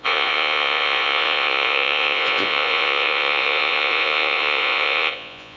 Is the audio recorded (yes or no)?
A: no